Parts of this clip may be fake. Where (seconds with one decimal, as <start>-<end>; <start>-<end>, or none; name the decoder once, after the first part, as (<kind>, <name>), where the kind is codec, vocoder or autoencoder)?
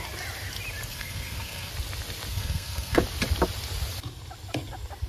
0.9-1.7 (codec, SNAC); 2.3-3.0